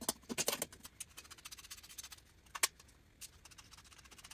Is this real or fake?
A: real